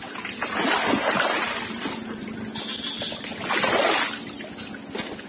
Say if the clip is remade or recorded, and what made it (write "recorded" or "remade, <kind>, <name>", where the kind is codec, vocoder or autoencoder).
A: recorded